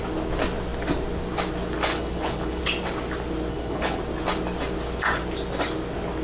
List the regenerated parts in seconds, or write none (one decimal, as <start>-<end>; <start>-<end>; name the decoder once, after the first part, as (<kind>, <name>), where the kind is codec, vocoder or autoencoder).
1.9-2.6 (codec, HILCodec); 3.5-4.0